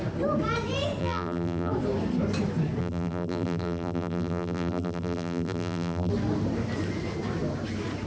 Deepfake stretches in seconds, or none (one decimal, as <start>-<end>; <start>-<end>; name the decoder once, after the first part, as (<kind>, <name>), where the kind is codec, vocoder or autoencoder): 1.0-1.7 (vocoder, BigVGAN v2); 2.8-6.1